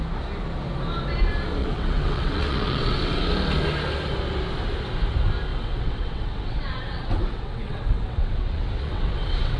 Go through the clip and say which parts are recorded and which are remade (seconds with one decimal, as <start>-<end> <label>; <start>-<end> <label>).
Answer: 0.0-1.6 recorded; 1.6-3.3 remade; 3.3-5.5 recorded; 5.5-9.6 remade